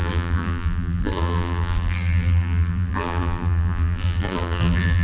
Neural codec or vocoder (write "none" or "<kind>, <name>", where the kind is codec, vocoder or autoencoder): vocoder, BigVGAN v2